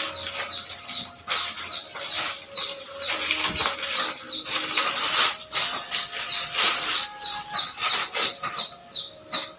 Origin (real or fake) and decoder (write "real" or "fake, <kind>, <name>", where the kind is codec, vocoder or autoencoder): real